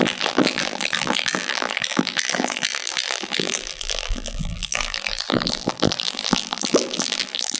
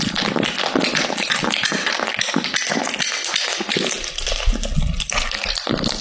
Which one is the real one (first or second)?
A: second